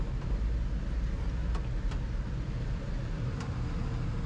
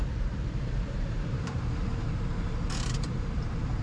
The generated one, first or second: second